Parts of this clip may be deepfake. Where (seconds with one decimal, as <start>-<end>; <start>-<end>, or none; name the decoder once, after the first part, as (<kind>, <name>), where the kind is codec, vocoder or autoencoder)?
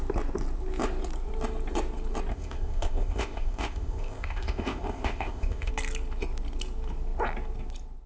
2.3-5.7 (codec, ZipCodec)